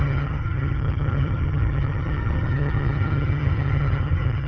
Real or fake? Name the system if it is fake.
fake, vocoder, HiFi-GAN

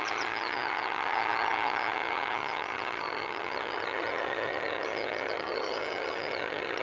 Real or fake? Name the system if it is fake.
fake, vocoder, HiFi-GAN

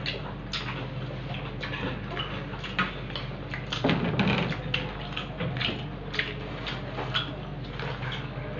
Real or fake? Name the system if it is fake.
real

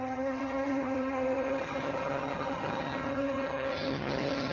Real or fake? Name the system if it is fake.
fake, vocoder, HiFi-GAN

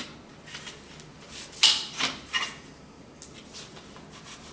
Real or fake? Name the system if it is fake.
real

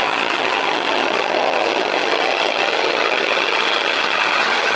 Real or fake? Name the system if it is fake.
fake, vocoder, HiFi-GAN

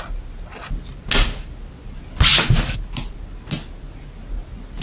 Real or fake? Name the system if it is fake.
real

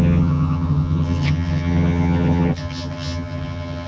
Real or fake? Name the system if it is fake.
fake, vocoder, HiFi-GAN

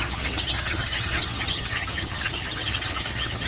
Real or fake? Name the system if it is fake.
fake, vocoder, HiFi-GAN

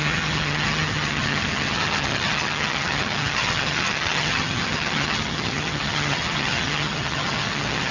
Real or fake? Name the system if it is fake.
fake, vocoder, HiFi-GAN